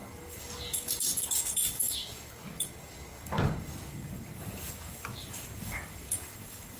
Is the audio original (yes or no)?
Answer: no